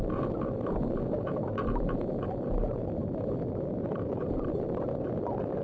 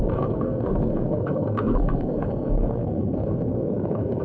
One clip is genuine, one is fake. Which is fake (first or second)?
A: second